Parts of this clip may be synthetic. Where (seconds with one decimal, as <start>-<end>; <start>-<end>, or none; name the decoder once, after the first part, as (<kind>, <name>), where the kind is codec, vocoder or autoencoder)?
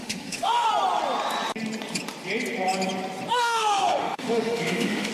0.0-0.7 (autoencoder, DAC-VAE); 3.3-5.1